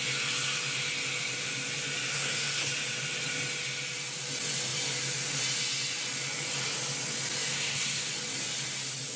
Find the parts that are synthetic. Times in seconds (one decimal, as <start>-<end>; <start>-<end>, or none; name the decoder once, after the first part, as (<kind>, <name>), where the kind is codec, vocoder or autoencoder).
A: 2.1-2.7 (codec, SNAC); 7.5-8.1

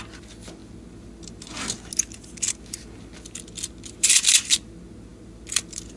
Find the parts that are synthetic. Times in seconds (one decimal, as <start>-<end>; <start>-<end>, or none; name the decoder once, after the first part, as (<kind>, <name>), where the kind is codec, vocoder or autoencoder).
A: none

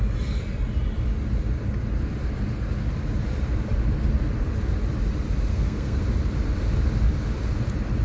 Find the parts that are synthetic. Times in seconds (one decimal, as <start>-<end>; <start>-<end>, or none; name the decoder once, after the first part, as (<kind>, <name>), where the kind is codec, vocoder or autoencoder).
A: 5.5-6.0 (codec, SNAC)

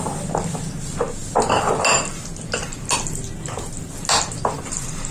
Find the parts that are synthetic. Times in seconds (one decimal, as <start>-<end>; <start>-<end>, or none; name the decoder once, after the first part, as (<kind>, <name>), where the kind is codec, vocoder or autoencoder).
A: none